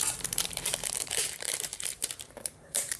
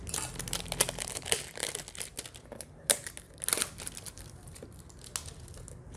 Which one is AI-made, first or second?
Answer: first